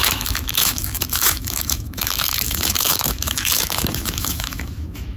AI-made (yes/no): yes